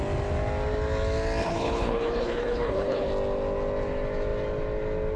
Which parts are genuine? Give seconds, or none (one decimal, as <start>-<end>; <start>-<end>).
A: 0.0-1.4; 3.1-5.2